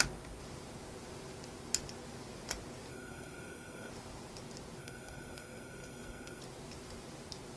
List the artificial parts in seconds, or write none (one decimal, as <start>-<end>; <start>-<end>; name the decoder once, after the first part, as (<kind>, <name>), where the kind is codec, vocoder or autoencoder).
2.9-3.9 (codec, SNAC); 4.8-6.4